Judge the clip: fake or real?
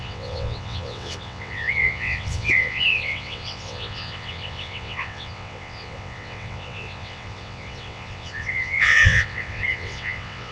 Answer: fake